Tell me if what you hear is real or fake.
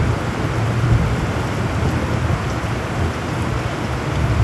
real